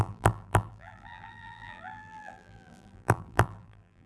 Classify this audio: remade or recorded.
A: remade